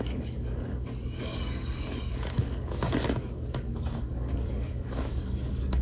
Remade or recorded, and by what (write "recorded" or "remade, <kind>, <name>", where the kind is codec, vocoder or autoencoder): remade, codec, DAC